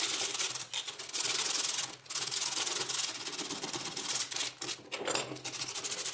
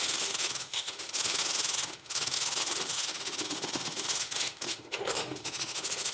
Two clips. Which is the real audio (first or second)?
first